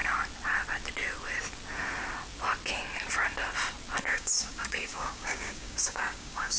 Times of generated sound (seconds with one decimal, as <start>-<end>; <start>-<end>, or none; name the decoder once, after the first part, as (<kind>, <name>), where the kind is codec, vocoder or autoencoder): 4.0-6.6 (codec, DAC)